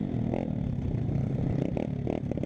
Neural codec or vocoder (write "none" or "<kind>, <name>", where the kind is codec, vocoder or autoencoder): none